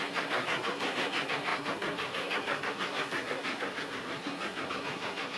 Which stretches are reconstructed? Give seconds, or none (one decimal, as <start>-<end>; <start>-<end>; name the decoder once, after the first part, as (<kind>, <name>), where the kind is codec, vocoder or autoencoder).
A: 0.0-5.4 (codec, SNAC)